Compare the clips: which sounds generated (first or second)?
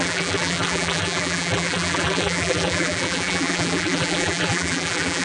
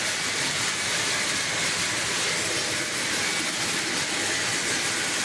first